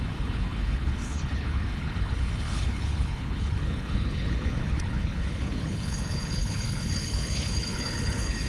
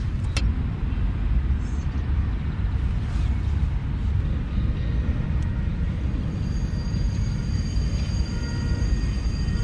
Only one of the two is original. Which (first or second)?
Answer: second